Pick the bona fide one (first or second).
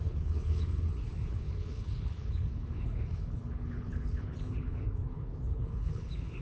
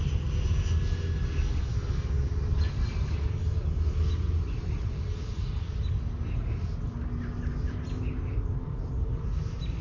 second